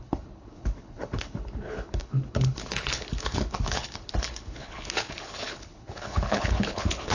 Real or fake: fake